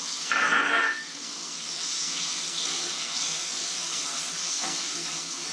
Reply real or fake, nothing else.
fake